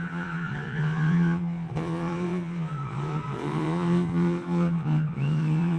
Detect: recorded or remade remade